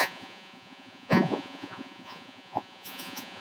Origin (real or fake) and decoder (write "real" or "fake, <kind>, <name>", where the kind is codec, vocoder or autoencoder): fake, vocoder, Vocos